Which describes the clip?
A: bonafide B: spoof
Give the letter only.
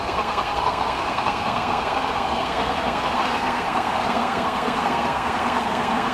B